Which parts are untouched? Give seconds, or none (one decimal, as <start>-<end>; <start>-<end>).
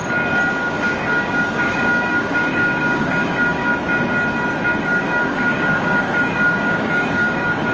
0.0-0.6; 3.6-4.8